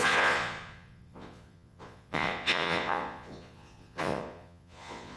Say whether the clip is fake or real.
fake